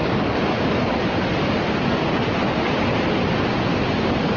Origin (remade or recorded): recorded